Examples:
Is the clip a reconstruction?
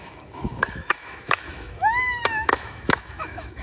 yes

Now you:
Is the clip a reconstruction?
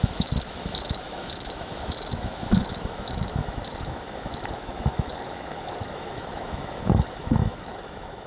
yes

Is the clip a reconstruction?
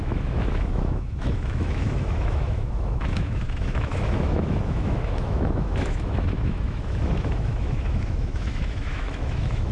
yes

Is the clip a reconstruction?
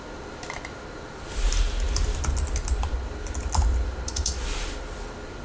no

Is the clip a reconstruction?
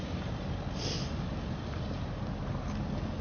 no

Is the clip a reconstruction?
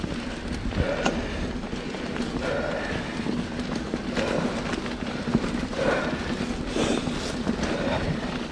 no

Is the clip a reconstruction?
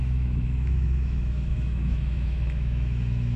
yes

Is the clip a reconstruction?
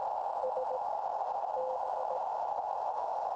no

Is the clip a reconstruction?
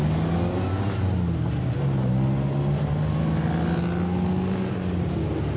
no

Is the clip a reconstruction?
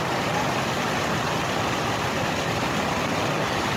no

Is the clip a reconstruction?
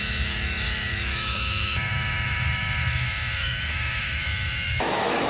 yes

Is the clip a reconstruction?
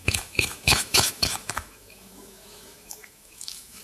yes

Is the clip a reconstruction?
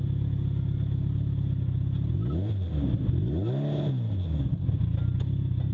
no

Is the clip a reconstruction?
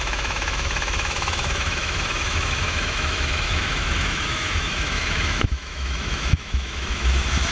yes